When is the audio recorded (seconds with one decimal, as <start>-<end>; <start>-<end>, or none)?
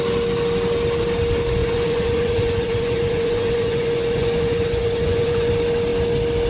0.0-1.6; 5.5-6.5